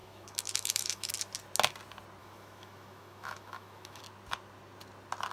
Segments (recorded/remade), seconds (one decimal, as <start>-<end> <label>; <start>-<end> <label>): 0.0-1.1 remade; 1.1-2.2 recorded; 2.2-4.0 remade; 4.0-5.3 recorded